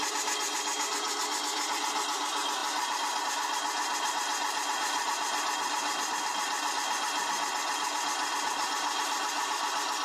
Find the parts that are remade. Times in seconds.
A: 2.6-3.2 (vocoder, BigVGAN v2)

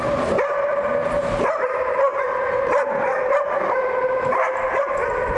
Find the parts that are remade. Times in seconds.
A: 0.7-1.3 (vocoder, BigVGAN v2); 2.1-5.4

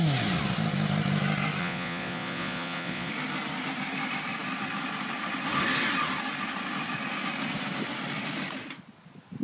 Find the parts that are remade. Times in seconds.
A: 1.6-3.1 (vocoder, Vocos)